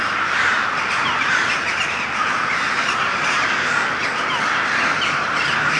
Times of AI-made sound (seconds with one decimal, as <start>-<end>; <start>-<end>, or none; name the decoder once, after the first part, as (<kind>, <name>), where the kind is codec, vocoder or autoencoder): 0.0-4.0 (vocoder, BigVGAN v2); 4.7-5.8